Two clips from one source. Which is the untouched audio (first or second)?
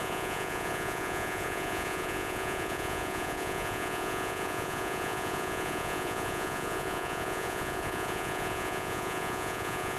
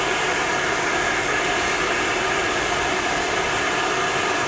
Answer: second